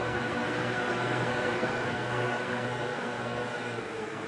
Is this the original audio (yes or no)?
no